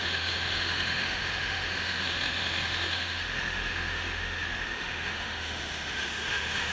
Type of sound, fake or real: fake